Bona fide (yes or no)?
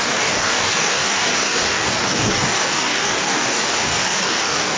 no